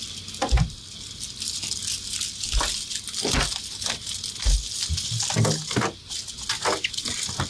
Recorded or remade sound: recorded